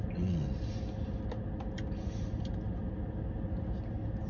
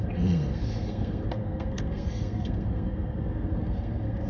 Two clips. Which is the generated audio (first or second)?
second